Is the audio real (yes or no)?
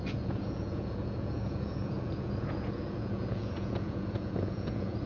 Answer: no